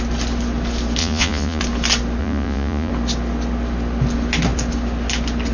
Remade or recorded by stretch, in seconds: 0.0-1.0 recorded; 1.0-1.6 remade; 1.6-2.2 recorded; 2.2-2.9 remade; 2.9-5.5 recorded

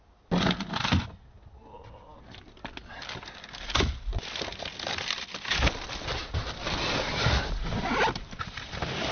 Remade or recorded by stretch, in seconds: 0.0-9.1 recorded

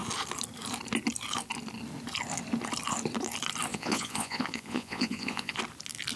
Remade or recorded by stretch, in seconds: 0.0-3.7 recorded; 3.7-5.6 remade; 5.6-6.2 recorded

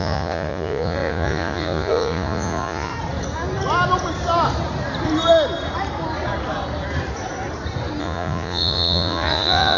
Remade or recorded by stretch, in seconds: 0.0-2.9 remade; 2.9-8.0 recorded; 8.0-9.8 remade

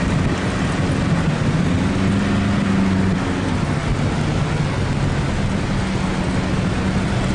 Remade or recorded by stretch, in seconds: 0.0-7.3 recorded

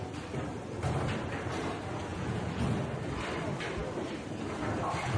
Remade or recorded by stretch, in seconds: 0.0-2.1 recorded; 2.1-2.6 remade; 2.6-5.2 recorded

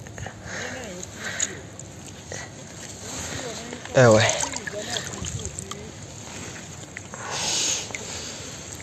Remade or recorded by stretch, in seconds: 0.0-6.4 recorded; 6.4-7.1 remade; 7.1-8.8 recorded